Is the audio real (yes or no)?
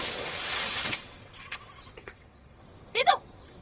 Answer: no